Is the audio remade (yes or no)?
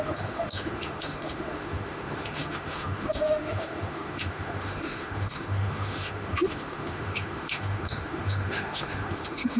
yes